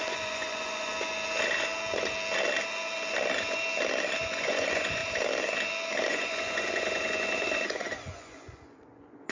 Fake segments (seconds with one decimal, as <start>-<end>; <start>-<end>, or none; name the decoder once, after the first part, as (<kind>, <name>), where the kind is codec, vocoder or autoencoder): 0.0-0.9 (vocoder, Vocos); 4.2-5.0; 6.1-9.3